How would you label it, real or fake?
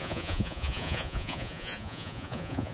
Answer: fake